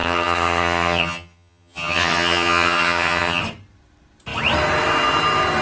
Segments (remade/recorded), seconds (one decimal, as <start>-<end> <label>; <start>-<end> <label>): 0.0-3.4 remade; 3.4-5.6 recorded

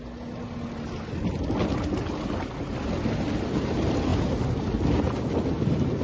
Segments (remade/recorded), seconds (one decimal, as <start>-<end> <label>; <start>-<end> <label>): 0.0-6.0 recorded

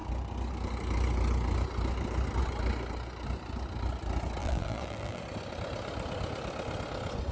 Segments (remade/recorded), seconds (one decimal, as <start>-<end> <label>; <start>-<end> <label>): 0.0-4.4 recorded; 4.4-5.2 remade; 5.2-7.3 recorded

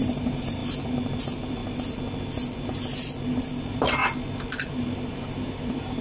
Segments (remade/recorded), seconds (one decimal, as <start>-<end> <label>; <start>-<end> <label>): 0.0-0.6 remade; 0.6-1.2 recorded; 1.2-1.6 remade; 1.6-3.3 recorded; 3.3-4.0 remade; 4.0-4.7 recorded; 4.7-6.0 remade

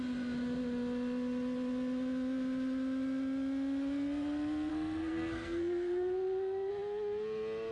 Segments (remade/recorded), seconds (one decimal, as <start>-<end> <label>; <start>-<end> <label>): 0.0-4.7 recorded; 4.7-6.7 remade; 6.7-7.7 recorded